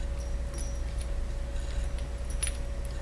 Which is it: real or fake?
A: real